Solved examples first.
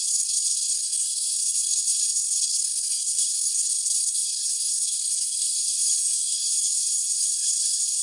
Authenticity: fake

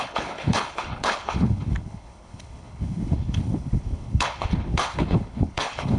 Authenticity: fake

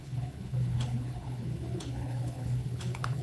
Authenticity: fake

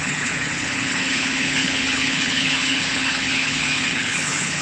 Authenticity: fake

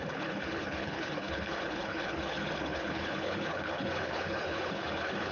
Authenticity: fake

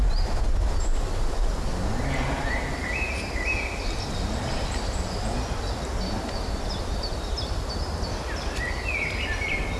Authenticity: real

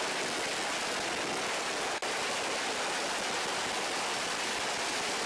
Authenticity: real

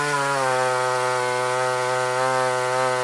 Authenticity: real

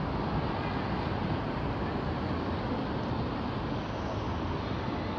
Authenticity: real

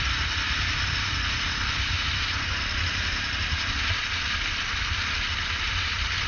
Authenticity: real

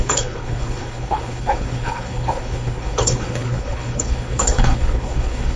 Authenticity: fake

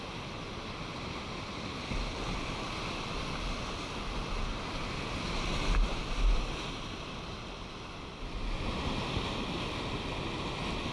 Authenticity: real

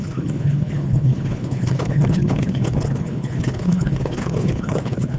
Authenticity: fake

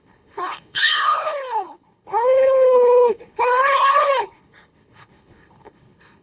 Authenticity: fake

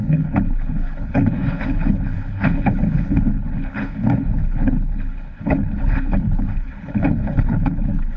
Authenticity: fake